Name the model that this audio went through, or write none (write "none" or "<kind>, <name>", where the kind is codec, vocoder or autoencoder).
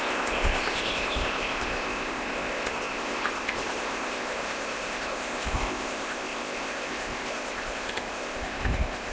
codec, ZipCodec